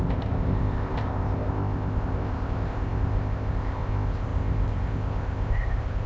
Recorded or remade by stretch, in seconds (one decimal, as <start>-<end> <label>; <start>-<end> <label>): 0.0-6.1 remade

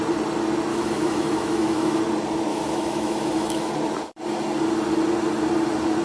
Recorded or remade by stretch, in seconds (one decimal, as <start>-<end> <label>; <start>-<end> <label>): 0.0-0.7 recorded; 0.7-2.0 remade; 2.0-2.5 recorded; 2.5-3.7 remade; 3.7-6.0 recorded

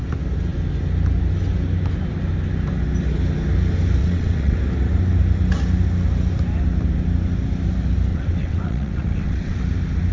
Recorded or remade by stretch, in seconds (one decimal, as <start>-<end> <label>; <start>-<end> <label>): 0.0-4.0 recorded; 4.0-4.6 remade; 4.6-8.1 recorded; 8.1-9.6 remade; 9.6-10.1 recorded

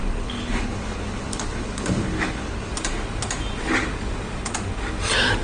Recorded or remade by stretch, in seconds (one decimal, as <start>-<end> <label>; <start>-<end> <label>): 0.0-2.7 remade; 2.7-5.4 recorded

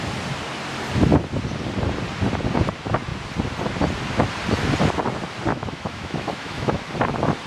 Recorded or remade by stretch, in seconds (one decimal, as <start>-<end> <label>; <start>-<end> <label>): 0.0-5.5 recorded; 5.5-6.8 remade; 6.8-7.5 recorded

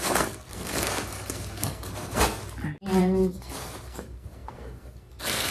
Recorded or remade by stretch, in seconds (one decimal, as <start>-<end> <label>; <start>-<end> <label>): 0.0-2.4 remade; 2.4-3.0 recorded; 3.0-5.5 remade

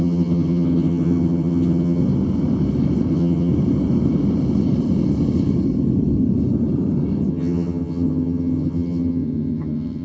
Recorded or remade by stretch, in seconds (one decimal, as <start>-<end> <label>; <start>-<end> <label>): 0.0-2.0 remade; 2.0-3.1 recorded; 3.1-3.5 remade; 3.5-7.3 recorded; 7.3-10.0 remade